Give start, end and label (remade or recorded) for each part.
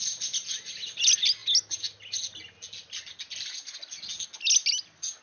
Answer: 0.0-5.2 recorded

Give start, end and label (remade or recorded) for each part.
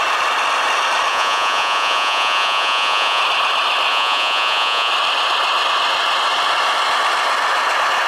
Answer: 0.0-1.1 recorded; 1.1-3.2 remade; 3.2-3.9 recorded; 3.9-4.9 remade; 4.9-8.1 recorded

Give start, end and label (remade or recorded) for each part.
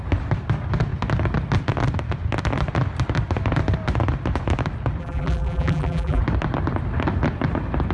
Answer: 0.0-5.0 recorded; 5.0-6.2 remade; 6.2-7.9 recorded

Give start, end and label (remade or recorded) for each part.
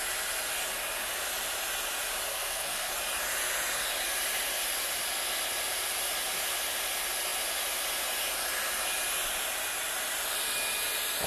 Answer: 0.0-2.3 recorded; 2.3-2.9 remade; 2.9-11.3 recorded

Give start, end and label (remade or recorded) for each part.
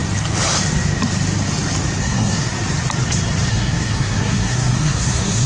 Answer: 0.0-2.0 recorded; 2.0-2.5 remade; 2.5-3.5 recorded; 3.5-5.5 remade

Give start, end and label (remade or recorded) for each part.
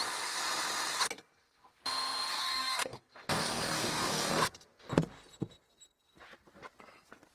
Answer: 0.0-2.3 recorded; 2.3-3.0 remade; 3.0-3.4 recorded; 3.4-4.3 remade; 4.3-7.3 recorded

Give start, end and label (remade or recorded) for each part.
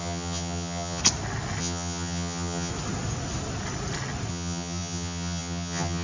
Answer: 0.0-1.0 remade; 1.0-1.6 recorded; 1.6-2.7 remade; 2.7-4.3 recorded; 4.3-6.0 remade